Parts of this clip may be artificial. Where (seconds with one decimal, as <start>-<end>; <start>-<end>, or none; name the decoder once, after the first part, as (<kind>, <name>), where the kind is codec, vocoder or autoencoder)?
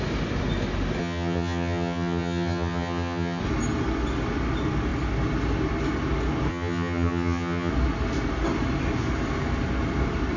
1.0-3.4 (vocoder, HiFi-GAN); 6.5-7.7